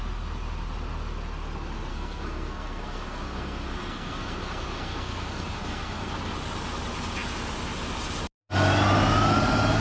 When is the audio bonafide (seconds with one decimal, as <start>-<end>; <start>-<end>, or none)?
0.0-1.9; 6.1-9.8